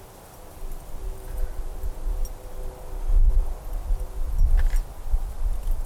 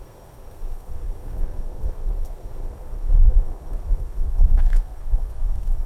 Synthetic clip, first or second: second